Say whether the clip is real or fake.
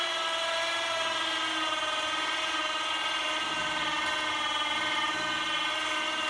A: real